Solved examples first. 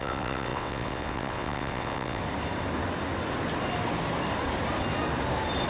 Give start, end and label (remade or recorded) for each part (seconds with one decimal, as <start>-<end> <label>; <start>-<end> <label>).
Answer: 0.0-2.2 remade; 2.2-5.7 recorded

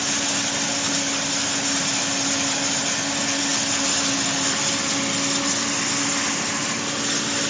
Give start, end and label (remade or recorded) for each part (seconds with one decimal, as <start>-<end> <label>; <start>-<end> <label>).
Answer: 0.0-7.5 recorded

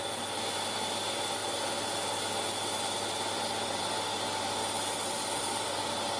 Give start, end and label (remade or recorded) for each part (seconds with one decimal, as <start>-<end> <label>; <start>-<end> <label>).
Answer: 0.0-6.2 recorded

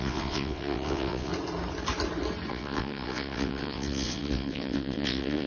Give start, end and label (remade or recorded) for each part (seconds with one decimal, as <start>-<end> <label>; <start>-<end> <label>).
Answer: 0.0-1.3 remade; 1.3-2.5 recorded; 2.5-5.5 remade